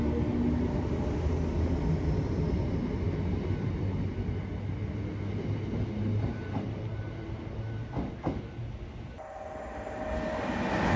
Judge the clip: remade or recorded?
recorded